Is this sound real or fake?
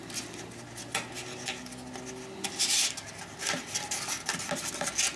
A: real